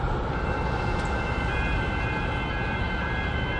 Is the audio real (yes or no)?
yes